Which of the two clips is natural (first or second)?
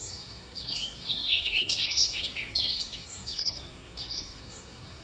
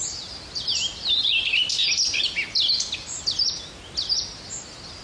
second